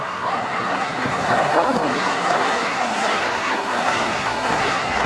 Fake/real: fake